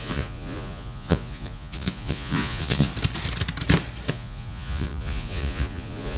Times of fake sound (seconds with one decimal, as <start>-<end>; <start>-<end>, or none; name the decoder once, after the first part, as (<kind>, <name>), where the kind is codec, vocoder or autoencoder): 0.0-2.9 (vocoder, Vocos); 4.1-6.2